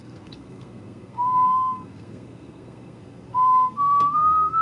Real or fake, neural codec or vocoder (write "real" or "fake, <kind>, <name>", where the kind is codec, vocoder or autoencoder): fake, codec, SNAC